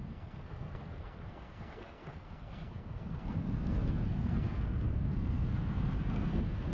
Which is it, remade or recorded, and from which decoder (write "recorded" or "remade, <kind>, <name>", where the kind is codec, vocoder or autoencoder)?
remade, codec, SNAC